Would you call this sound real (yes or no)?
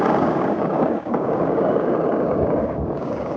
no